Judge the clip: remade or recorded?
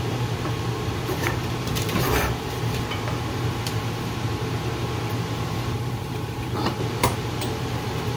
remade